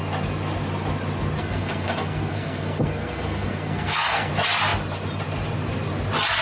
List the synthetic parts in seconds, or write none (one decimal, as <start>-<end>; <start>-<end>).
1.4-4.3